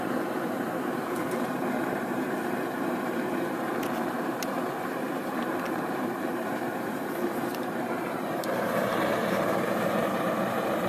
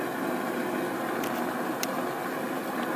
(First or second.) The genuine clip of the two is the second